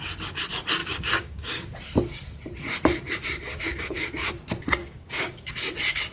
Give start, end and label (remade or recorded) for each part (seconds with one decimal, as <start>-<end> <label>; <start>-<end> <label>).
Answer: 0.0-0.8 recorded; 0.8-1.7 remade; 1.7-3.5 recorded; 3.5-4.3 remade; 4.3-4.8 recorded; 4.8-5.5 remade; 5.5-6.1 recorded